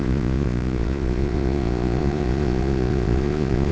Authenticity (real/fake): fake